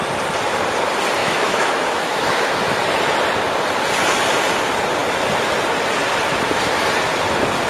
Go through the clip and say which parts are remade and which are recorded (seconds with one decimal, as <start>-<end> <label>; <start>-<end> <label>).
0.0-1.2 recorded; 1.2-2.5 remade; 2.5-7.7 recorded